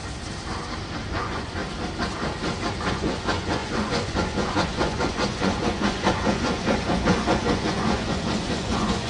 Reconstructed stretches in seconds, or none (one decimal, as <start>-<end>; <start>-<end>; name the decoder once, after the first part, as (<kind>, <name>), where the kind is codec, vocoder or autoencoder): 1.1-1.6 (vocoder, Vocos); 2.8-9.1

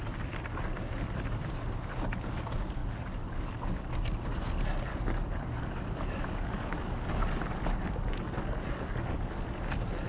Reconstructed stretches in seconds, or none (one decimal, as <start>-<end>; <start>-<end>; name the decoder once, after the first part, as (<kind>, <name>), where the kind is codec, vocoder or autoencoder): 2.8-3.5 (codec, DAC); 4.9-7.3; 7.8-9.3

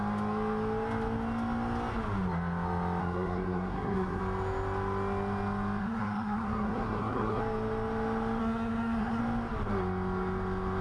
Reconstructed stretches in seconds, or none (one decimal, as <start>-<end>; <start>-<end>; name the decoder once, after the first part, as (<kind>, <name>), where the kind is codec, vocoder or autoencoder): 3.0-4.2 (codec, SNAC); 5.8-7.4; 8.4-9.2

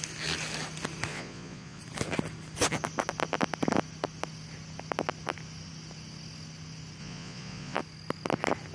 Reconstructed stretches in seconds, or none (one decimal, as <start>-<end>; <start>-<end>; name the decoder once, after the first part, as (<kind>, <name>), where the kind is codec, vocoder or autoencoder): 1.1-1.8 (vocoder, Vocos); 7.0-7.8

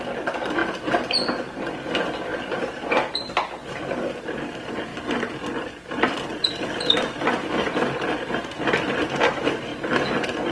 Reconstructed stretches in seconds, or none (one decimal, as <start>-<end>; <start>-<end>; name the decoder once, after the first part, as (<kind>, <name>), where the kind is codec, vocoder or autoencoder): 0.6-1.6 (vocoder, BigVGAN v2); 2.3-3.5; 4.9-8.3

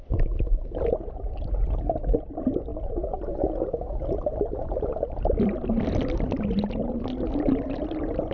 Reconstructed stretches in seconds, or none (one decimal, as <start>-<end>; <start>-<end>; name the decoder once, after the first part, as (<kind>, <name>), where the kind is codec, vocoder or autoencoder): none

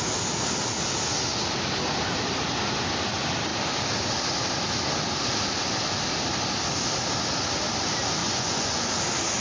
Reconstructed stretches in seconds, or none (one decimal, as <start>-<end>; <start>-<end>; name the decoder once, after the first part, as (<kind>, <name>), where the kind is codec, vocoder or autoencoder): 8.2-8.9 (vocoder, Vocos)

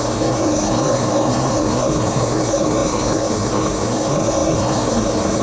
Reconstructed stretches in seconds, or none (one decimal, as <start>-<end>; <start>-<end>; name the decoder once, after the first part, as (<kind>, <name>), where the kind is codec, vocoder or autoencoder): 0.0-5.4 (codec, SNAC)